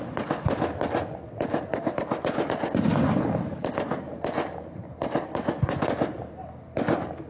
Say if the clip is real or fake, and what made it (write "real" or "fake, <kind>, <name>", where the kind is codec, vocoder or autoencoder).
real